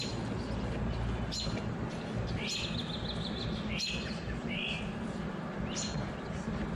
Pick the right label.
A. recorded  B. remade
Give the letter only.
A